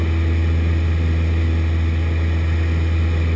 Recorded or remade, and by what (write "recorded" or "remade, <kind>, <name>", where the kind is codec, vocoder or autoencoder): recorded